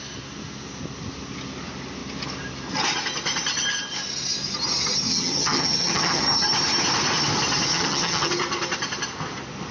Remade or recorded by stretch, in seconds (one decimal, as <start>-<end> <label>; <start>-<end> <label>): 0.0-5.1 recorded; 5.1-6.2 remade; 6.2-7.7 recorded; 7.7-8.3 remade; 8.3-9.7 recorded